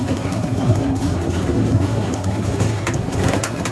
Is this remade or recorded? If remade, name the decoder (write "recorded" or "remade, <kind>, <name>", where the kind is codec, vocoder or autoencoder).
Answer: remade, codec, SNAC